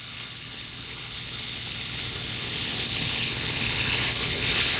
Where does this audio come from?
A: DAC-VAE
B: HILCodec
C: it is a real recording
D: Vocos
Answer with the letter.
B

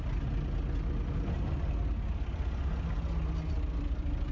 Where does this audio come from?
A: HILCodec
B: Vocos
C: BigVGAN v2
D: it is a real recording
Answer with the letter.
D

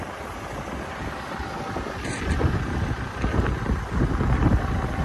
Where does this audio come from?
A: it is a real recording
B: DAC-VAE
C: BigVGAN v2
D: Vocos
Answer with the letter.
A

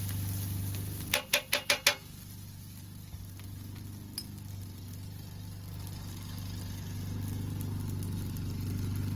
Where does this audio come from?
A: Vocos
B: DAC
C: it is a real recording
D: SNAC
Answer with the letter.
C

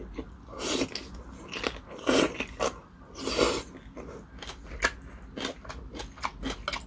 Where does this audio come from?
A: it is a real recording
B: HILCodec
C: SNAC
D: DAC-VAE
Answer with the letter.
A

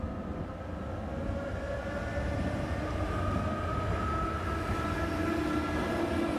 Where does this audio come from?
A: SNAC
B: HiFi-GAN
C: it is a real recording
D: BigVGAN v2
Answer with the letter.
C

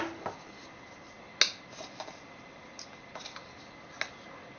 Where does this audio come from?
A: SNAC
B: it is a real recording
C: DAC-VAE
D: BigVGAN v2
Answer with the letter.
B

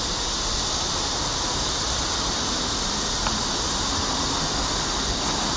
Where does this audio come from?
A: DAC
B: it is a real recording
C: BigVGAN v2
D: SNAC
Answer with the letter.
B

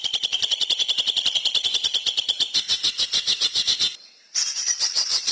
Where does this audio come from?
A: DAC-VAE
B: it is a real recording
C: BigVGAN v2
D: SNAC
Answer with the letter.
C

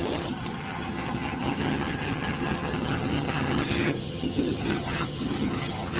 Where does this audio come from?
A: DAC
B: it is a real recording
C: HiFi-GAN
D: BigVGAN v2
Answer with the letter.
C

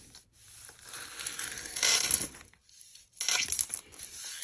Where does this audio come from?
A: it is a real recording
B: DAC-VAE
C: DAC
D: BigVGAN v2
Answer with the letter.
A